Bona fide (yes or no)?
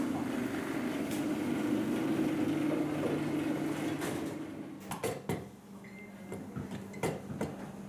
yes